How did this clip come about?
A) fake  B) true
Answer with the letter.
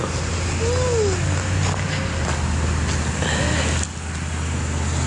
B